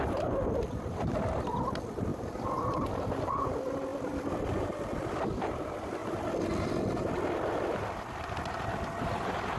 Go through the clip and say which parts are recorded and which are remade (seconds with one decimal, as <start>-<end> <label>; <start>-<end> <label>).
0.0-6.0 remade; 6.0-8.9 recorded; 8.9-9.6 remade